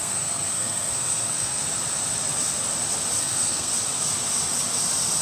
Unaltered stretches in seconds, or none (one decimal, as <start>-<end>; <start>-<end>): 1.6-3.2; 3.7-5.2